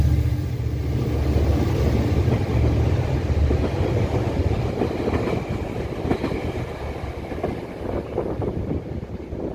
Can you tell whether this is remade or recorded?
recorded